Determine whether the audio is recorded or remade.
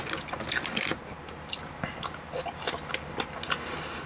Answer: recorded